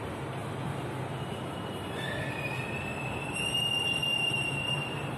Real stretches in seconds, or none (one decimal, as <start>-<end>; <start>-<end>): 0.0-4.0